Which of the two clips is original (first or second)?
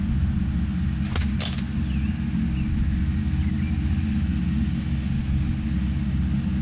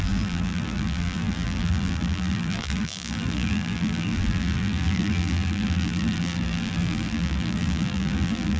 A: first